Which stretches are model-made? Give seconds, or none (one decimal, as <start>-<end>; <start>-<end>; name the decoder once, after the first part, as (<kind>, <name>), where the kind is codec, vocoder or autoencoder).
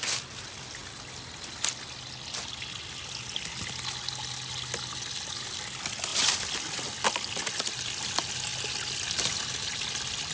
none